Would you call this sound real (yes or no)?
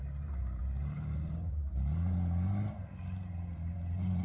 no